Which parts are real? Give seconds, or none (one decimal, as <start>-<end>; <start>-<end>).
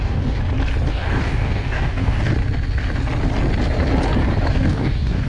0.4-0.9; 2.3-4.5